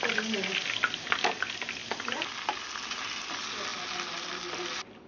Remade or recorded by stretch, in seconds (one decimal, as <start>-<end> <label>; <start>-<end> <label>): 0.0-5.1 recorded